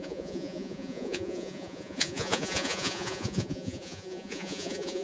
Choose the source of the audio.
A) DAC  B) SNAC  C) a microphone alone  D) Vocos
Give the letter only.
D